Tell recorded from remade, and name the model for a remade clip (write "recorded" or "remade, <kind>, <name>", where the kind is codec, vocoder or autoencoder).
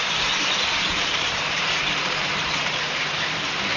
remade, vocoder, BigVGAN v2